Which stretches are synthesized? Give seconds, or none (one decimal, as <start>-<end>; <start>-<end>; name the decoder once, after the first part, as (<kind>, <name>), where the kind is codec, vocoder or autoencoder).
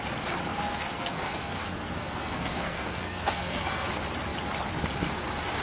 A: 0.5-3.9 (codec, SNAC)